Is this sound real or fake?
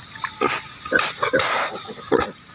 real